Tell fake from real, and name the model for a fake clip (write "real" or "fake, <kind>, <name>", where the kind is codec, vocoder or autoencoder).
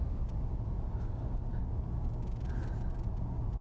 real